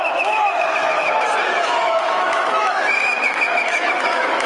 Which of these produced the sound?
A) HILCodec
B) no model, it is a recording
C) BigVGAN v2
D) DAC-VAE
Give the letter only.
D